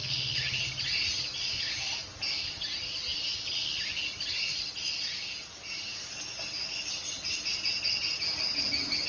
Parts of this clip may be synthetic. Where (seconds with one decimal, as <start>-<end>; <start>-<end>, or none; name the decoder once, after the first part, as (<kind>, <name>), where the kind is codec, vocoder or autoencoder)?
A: none